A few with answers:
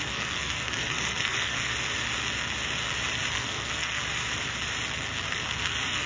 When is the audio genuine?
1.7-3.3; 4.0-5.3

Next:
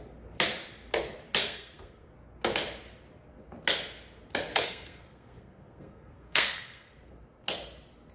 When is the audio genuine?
0.0-1.4; 2.1-4.5; 7.1-8.1

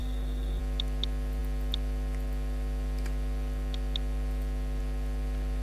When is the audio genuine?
0.6-5.6

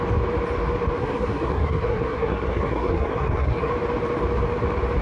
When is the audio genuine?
0.0-1.0; 3.7-5.0

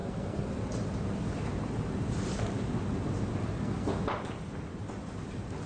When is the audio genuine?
0.5-3.4; 4.0-5.7

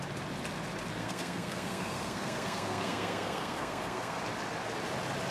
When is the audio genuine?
0.0-1.0; 4.2-5.3

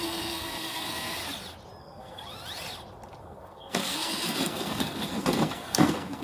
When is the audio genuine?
1.2-1.8; 2.2-3.2

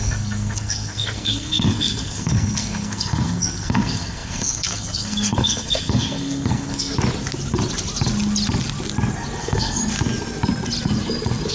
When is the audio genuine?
6.9-9.4; 9.8-11.5